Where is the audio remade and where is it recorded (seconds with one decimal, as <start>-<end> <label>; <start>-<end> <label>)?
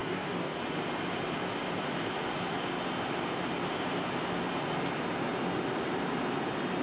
0.0-0.6 remade; 0.6-6.8 recorded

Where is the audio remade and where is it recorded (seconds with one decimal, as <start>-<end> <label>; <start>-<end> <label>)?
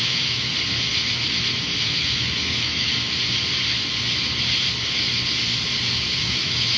0.0-0.5 remade; 0.5-1.8 recorded; 1.8-2.9 remade; 2.9-6.2 recorded; 6.2-6.8 remade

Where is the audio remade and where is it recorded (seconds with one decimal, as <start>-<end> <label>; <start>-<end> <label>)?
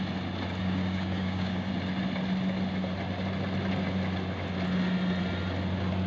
0.0-0.6 recorded; 0.6-1.7 remade; 1.7-6.1 recorded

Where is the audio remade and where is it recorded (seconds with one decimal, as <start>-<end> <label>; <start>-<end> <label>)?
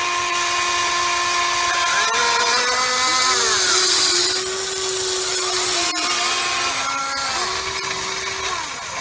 0.0-9.0 recorded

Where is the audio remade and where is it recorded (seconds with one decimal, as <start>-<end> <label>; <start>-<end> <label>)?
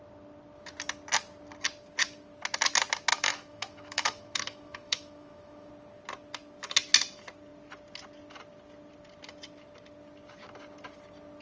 0.0-3.1 recorded; 3.1-5.7 remade; 5.7-11.4 recorded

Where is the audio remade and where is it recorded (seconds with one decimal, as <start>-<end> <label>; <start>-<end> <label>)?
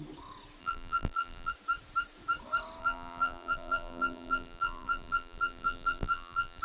0.0-0.6 recorded; 0.6-1.5 remade; 1.5-2.8 recorded; 2.8-6.6 remade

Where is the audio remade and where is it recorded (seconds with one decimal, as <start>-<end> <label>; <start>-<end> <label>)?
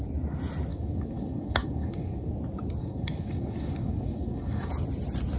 0.0-0.7 recorded; 0.7-2.3 remade; 2.3-2.8 recorded; 2.8-4.7 remade; 4.7-5.4 recorded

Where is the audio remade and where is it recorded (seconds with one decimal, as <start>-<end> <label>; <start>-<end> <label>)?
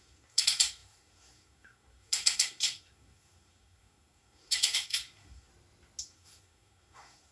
0.0-5.5 remade; 5.5-6.0 recorded; 6.0-7.3 remade